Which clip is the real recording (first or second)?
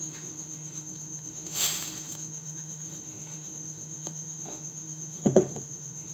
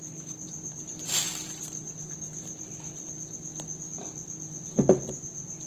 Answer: second